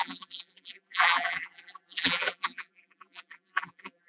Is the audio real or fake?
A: fake